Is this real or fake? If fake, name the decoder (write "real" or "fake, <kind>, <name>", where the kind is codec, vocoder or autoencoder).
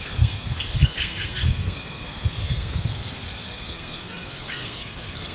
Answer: fake, codec, SNAC